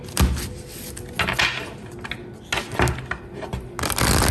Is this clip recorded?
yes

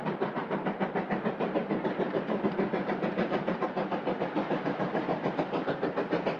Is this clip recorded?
no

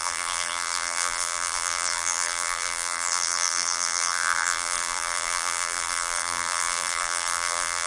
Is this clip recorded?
no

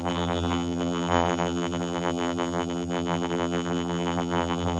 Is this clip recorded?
no